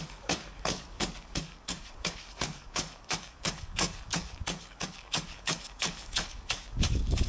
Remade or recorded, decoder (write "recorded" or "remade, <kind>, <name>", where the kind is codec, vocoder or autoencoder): remade, codec, DAC